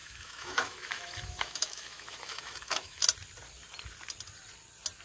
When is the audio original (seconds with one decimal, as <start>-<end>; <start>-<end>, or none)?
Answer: 3.0-5.0